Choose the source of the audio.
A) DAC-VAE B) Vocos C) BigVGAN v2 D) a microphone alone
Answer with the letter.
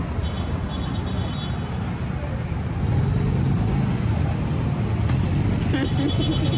D